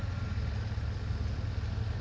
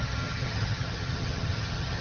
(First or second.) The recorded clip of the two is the first